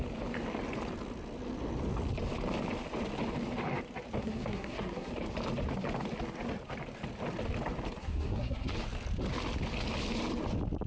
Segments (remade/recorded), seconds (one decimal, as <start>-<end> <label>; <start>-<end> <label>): 0.0-4.2 recorded; 4.2-5.1 remade; 5.1-8.0 recorded; 8.0-8.7 remade; 8.7-10.9 recorded